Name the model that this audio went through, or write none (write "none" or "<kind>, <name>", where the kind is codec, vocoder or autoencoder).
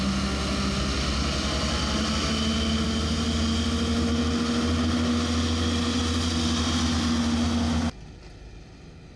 none